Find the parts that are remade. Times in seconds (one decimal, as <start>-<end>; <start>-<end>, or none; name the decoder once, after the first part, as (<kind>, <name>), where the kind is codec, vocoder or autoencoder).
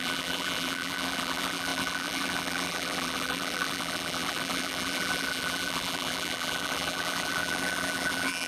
0.0-8.5 (vocoder, BigVGAN v2)